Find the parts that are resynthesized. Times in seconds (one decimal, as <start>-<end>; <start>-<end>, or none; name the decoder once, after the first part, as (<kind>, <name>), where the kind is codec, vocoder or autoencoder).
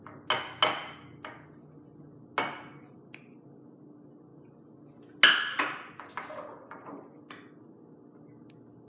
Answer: none